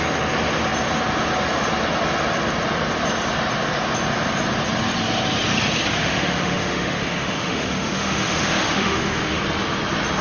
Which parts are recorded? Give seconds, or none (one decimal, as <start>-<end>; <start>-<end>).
0.0-6.0; 9.4-10.2